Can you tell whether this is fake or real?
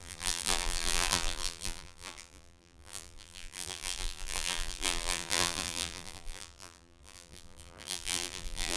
fake